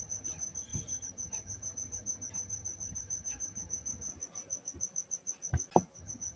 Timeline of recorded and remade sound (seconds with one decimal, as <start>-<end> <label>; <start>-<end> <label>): 0.0-4.1 remade; 4.1-6.0 recorded; 6.0-6.4 remade